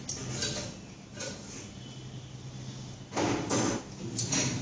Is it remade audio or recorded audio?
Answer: recorded